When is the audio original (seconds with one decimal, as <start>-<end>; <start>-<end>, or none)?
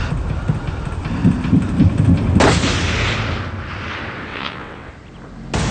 0.0-4.3; 4.9-5.7